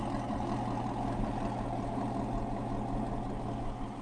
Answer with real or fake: real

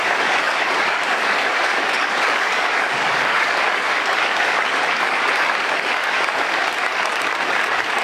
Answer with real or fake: fake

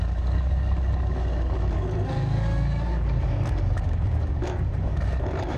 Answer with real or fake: fake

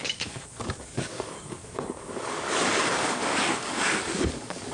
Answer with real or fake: fake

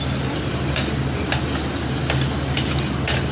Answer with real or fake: real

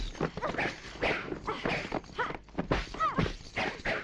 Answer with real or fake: real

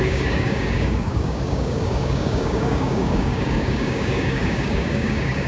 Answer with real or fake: fake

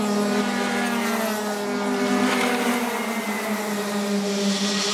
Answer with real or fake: real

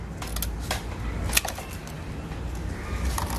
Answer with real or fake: real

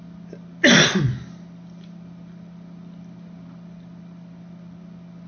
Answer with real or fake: real